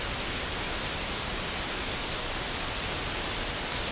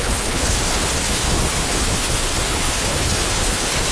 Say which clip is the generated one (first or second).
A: second